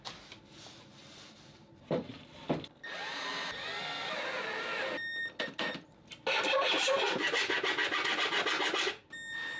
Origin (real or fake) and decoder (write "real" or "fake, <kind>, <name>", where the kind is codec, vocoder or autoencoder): real